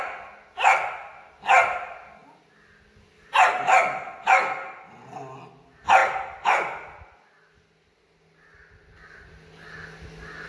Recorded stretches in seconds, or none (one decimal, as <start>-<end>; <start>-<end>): 0.0-10.5